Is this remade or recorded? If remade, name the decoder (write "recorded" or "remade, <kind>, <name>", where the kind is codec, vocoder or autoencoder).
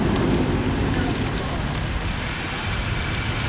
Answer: recorded